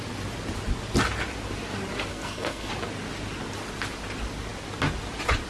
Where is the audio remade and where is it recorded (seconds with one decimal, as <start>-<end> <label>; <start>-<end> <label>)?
0.0-2.1 recorded; 2.1-2.7 remade; 2.7-5.5 recorded